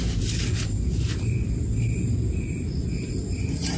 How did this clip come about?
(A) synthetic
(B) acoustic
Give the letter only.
A